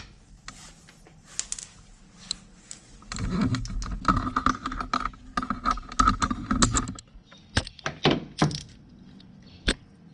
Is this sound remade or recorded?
recorded